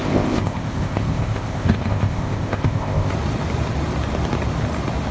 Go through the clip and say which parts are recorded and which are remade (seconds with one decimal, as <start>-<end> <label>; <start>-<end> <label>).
0.0-3.1 remade; 3.1-5.1 recorded